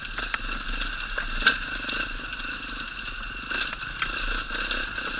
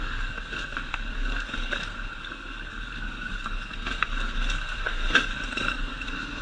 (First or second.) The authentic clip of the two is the first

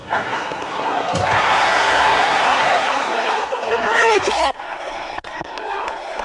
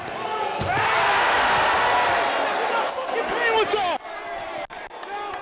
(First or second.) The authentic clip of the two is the second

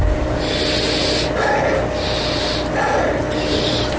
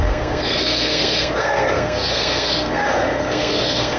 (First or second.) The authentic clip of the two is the first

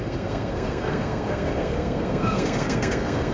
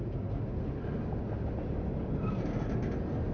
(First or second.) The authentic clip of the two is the second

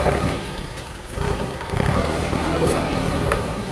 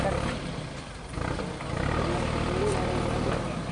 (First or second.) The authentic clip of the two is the second